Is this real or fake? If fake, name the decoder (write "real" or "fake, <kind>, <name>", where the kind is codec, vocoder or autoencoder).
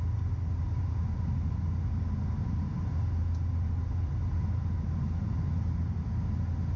real